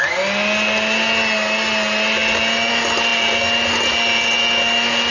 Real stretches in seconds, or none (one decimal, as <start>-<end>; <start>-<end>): 0.0-5.1

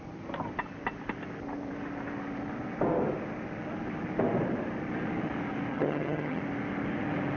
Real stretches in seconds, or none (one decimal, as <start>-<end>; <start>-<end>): 0.0-5.7; 6.4-7.4

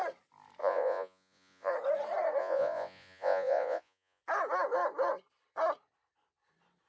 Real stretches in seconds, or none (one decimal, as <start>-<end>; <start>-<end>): 0.0-0.6; 1.7-2.4; 4.2-6.9

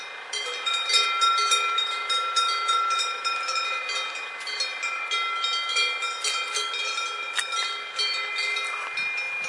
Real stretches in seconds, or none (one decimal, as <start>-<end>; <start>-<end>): 0.0-9.5

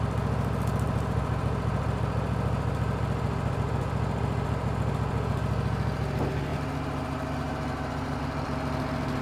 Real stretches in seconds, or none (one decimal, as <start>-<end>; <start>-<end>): 0.0-6.5; 8.2-9.2

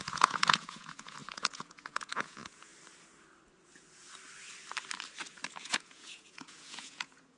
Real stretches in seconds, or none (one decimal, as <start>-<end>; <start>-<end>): 2.7-5.6

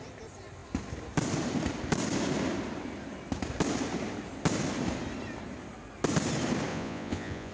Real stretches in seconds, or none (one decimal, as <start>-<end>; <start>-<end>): 0.0-6.7